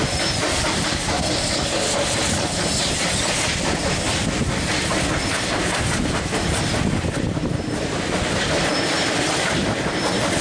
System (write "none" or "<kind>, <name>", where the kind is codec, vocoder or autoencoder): none